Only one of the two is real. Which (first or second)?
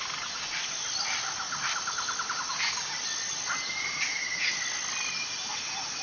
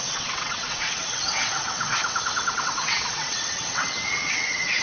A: first